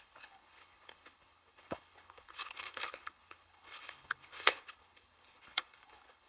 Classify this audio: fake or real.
fake